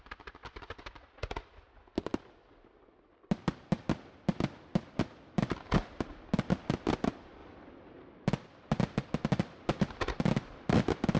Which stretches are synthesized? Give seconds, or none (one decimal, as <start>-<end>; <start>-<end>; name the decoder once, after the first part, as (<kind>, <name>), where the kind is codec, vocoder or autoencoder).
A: none